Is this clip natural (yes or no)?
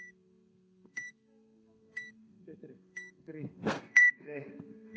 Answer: no